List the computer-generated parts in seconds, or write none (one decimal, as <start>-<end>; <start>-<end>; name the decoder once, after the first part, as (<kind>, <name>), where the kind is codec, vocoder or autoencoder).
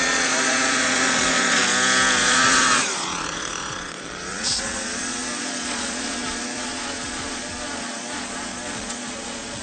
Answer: 0.0-1.6 (vocoder, Vocos); 2.2-9.6